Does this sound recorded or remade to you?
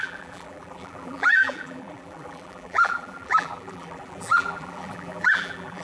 remade